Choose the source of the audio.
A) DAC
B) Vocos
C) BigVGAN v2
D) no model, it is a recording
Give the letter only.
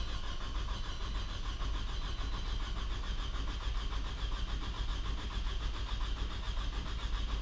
D